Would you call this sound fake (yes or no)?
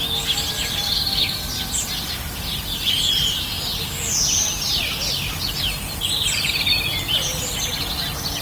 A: no